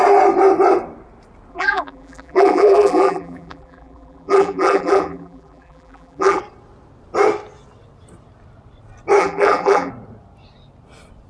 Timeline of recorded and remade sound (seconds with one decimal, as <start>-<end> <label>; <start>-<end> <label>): 0.0-1.5 recorded; 1.5-6.4 remade; 6.4-9.2 recorded; 9.2-9.9 remade; 9.9-11.3 recorded